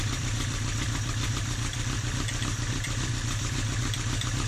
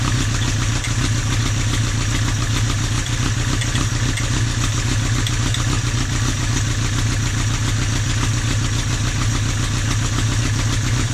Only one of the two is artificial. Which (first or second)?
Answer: first